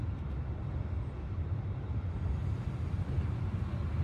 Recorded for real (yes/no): yes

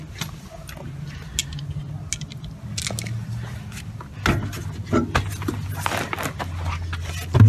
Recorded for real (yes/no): yes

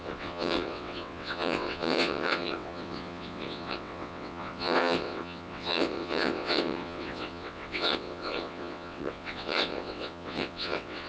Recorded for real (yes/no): no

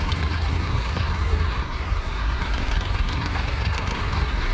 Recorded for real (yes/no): no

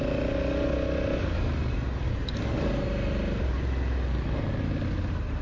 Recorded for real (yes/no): yes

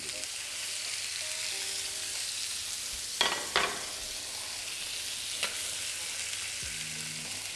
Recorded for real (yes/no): yes